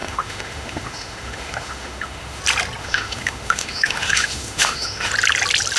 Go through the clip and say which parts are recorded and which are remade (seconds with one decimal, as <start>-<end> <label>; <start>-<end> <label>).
0.0-2.4 remade; 2.4-2.8 recorded; 2.8-5.1 remade; 5.1-5.8 recorded